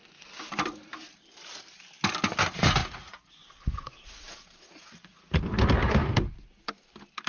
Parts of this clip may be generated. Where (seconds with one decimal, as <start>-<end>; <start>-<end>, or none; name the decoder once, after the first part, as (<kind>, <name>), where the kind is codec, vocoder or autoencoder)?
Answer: 2.8-3.3 (vocoder, Vocos); 3.9-5.4